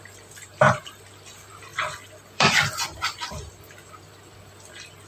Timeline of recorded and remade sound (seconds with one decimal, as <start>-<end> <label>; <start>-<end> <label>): 0.0-5.1 remade

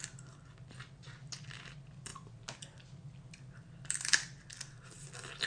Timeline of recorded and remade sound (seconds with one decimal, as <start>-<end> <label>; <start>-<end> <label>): 0.0-5.5 recorded

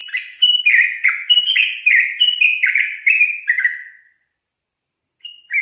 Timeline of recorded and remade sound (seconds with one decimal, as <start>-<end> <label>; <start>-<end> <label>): 0.0-1.9 recorded; 1.9-5.0 remade; 5.0-5.6 recorded

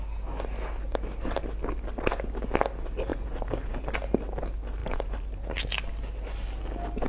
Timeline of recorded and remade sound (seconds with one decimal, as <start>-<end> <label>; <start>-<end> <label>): 0.0-3.1 recorded; 3.1-3.8 remade; 3.8-4.8 recorded; 4.8-5.4 remade; 5.4-7.1 recorded

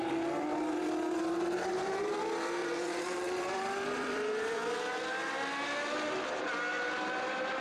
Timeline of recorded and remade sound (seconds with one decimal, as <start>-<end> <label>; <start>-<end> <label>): 0.0-2.6 recorded; 2.6-4.8 remade; 4.8-7.6 recorded

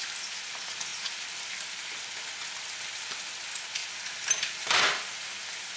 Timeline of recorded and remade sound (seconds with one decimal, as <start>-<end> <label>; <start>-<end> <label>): 0.0-0.9 recorded; 0.9-2.1 remade; 2.1-5.8 recorded

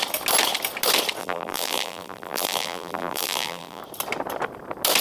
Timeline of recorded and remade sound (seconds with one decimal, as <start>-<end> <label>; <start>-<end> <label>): 0.0-1.2 recorded; 1.2-3.8 remade; 3.8-5.0 recorded